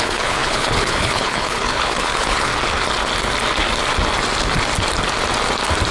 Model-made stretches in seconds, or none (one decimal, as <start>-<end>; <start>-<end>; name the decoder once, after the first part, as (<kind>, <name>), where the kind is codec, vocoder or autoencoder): 0.0-2.5 (codec, HILCodec)